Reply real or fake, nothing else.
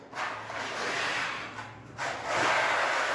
real